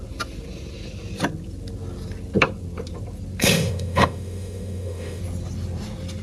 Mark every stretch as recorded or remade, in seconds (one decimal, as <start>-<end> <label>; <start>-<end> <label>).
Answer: 0.0-3.4 recorded; 3.4-5.2 remade; 5.2-6.2 recorded